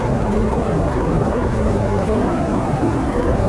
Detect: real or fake fake